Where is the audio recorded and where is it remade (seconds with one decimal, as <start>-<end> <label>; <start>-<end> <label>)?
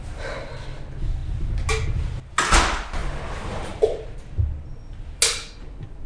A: 0.0-6.1 recorded